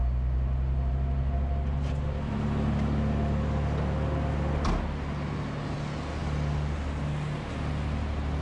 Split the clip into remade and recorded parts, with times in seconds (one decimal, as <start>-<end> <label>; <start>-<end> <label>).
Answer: 0.0-8.4 recorded